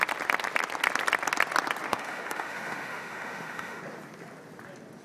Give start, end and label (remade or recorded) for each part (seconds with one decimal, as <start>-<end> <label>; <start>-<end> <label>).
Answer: 0.0-1.9 recorded; 1.9-3.8 remade; 3.8-5.0 recorded